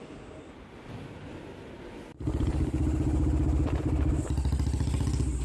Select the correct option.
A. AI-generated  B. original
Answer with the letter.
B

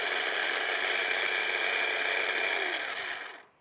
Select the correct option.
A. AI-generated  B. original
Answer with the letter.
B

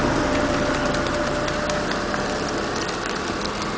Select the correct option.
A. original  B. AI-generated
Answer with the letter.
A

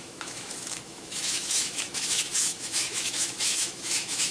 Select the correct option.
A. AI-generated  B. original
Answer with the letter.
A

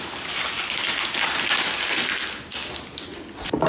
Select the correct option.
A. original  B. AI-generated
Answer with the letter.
A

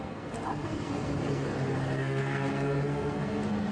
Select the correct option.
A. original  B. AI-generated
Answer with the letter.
B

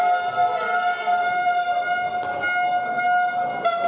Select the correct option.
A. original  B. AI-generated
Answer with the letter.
A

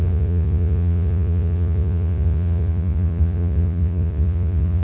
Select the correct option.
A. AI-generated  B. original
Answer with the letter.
A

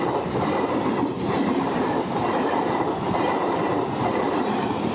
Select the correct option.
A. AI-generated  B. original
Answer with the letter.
A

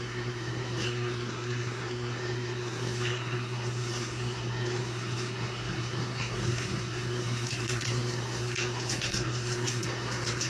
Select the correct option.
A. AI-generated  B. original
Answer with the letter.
A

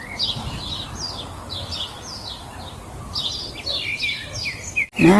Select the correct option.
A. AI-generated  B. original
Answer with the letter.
B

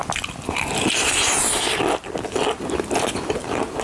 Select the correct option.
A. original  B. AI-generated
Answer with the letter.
A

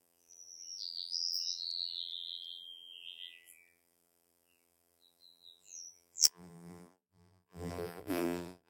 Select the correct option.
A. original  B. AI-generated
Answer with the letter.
B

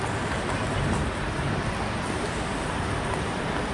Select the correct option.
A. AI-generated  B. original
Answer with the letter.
B